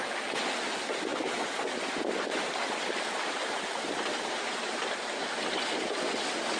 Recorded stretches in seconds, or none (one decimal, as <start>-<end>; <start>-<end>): 0.0-6.6